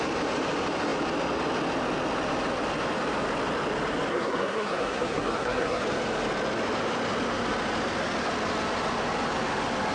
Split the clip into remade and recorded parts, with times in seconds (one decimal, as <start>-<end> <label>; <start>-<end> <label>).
0.0-4.1 recorded; 4.1-5.8 remade; 5.8-9.9 recorded